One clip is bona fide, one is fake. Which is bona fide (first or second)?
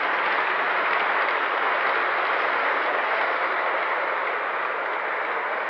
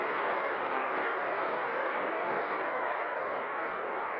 first